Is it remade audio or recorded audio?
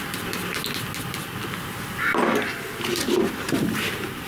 recorded